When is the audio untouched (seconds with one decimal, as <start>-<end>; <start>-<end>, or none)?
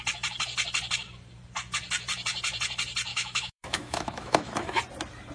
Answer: 0.0-3.1; 4.8-5.3